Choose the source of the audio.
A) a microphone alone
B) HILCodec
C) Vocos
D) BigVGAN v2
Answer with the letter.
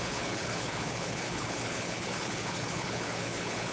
B